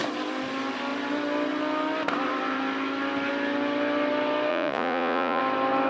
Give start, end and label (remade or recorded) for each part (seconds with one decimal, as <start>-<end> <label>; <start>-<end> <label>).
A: 0.0-4.5 recorded; 4.5-5.4 remade; 5.4-5.9 recorded